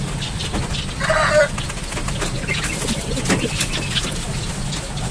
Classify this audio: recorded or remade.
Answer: recorded